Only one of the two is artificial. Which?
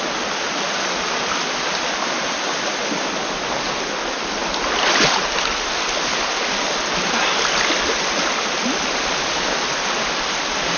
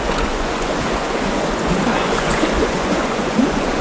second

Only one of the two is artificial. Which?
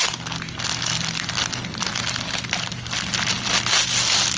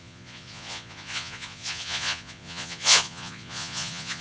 second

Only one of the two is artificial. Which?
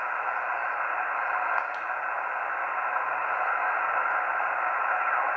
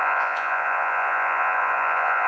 second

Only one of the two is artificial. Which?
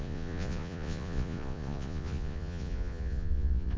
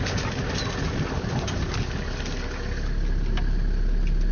first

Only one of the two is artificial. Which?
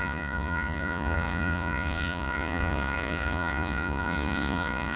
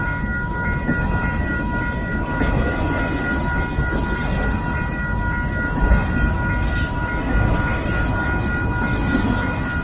first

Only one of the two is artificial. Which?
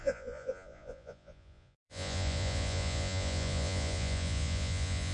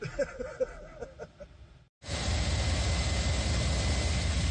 first